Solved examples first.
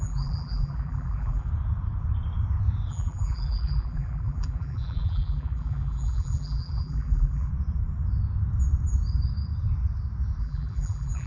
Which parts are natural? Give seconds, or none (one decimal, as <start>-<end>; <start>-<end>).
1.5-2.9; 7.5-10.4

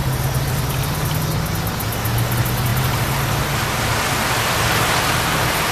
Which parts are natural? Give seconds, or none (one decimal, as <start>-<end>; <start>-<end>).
0.0-5.7

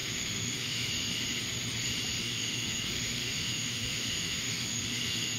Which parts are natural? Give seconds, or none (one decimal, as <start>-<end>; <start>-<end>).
0.9-2.2

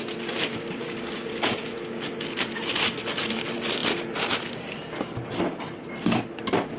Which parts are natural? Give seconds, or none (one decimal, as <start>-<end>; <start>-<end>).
0.0-0.8; 2.0-6.8

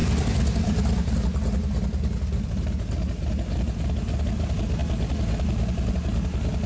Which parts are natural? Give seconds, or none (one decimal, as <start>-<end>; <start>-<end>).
1.1-6.7

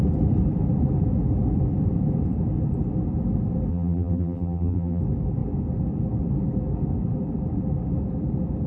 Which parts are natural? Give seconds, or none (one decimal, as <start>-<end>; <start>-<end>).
0.0-3.7; 5.0-8.7

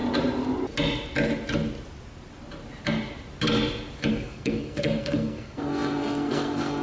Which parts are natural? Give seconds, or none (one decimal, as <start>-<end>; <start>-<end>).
0.0-4.1

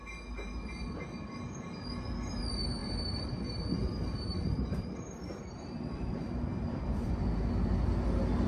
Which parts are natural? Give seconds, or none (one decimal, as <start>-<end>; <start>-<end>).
0.0-2.8; 7.1-8.5